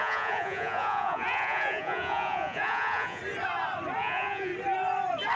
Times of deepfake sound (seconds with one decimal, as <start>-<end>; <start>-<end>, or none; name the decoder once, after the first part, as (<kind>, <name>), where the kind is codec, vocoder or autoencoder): 0.0-3.2 (vocoder, Vocos); 4.0-4.5